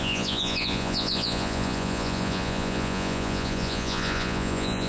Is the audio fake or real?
fake